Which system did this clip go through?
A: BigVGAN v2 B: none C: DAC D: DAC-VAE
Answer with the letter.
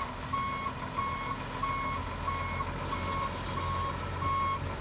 B